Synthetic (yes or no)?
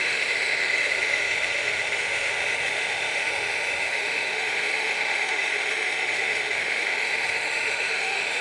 yes